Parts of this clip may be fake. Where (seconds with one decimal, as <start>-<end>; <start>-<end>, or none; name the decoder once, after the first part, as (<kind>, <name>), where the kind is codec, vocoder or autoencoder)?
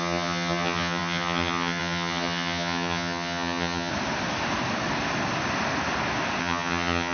0.0-3.9 (vocoder, HiFi-GAN); 6.4-7.1